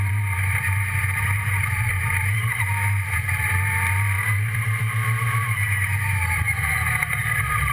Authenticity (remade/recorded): remade